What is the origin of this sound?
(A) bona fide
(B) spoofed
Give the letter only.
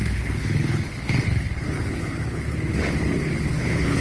B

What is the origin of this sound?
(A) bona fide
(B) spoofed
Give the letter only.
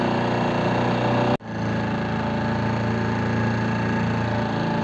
A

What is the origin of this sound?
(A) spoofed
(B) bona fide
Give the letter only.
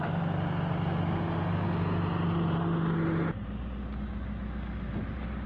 B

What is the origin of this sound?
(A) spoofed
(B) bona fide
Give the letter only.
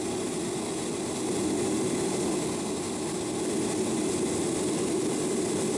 B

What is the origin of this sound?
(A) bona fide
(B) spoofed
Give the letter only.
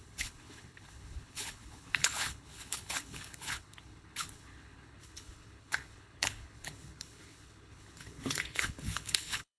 B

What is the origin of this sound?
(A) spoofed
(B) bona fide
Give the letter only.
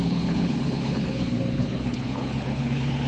A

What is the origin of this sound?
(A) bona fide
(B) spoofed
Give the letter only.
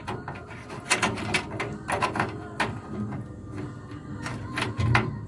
A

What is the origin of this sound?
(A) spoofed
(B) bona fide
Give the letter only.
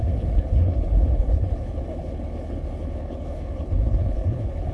A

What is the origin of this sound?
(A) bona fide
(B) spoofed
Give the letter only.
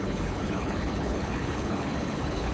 B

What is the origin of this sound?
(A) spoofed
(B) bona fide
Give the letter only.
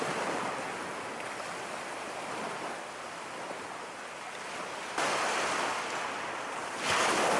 B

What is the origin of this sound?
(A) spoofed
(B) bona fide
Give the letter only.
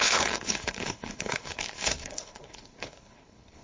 A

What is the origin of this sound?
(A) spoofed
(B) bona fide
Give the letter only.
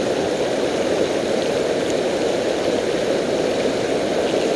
B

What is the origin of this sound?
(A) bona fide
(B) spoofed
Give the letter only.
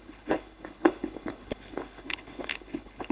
B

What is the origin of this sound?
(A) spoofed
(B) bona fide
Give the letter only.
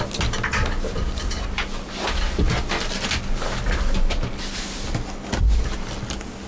B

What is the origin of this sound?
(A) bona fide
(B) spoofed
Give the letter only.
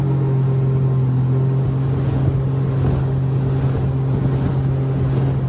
A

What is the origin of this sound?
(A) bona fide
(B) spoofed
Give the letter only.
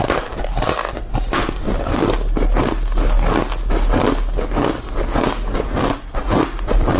A